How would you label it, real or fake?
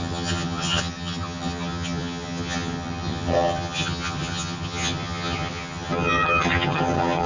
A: fake